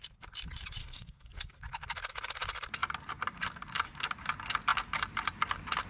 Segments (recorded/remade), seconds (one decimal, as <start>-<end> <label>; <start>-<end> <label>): 0.0-0.8 recorded; 0.8-1.3 remade; 1.3-5.9 recorded